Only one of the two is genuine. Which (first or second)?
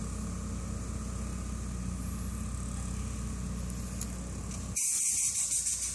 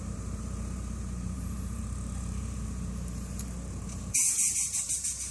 first